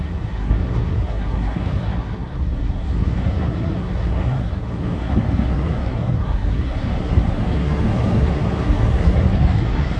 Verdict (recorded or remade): remade